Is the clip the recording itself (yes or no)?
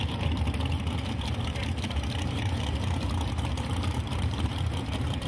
no